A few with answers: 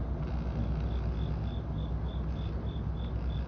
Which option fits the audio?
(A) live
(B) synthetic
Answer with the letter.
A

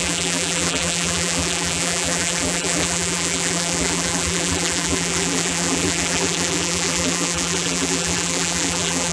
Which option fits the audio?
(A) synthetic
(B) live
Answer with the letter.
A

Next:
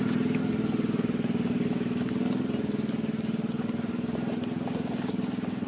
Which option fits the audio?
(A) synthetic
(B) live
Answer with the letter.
B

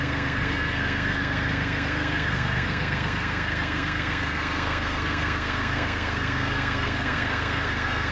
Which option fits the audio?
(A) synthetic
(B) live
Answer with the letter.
A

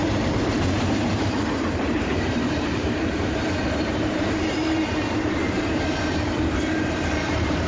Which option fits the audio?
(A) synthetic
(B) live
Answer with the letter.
A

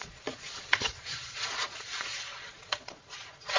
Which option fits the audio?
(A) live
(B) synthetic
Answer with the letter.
B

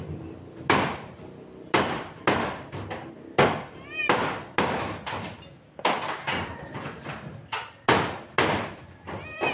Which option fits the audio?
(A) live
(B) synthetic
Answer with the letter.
A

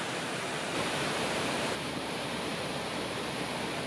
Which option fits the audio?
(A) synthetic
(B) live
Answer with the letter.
A